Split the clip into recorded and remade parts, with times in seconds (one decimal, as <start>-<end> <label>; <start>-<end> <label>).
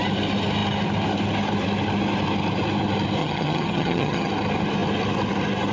0.0-3.2 recorded; 3.2-4.3 remade; 4.3-5.7 recorded